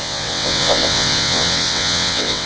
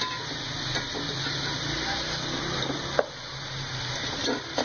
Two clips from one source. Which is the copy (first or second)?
first